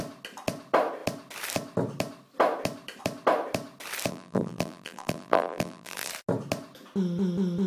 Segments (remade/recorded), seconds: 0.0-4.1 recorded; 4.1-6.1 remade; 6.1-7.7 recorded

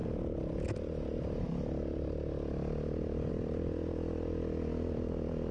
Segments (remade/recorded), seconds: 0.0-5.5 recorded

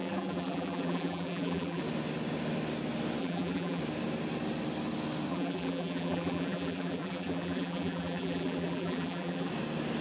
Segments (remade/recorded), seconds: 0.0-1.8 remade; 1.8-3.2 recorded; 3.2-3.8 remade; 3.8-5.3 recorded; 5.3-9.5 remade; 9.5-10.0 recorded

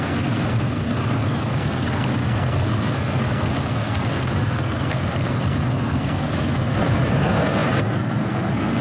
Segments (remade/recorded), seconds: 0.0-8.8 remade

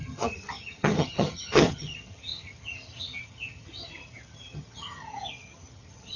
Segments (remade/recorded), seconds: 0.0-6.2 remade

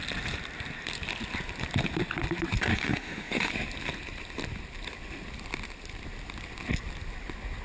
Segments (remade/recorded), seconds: 0.0-2.7 recorded; 2.7-3.5 remade; 3.5-7.6 recorded

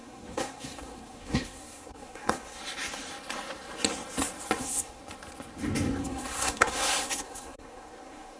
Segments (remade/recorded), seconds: 0.0-2.6 remade; 2.6-4.6 recorded; 4.6-5.0 remade; 5.0-6.0 recorded; 6.0-8.4 remade